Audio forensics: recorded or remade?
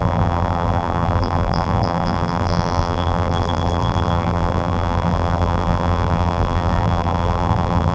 remade